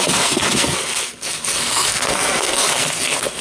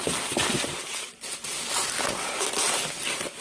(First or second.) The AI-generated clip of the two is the first